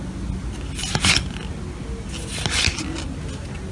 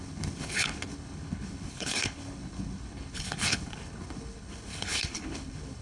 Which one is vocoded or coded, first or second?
second